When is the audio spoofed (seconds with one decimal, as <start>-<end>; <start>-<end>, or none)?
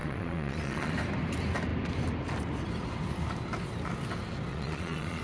0.0-0.9; 4.5-5.2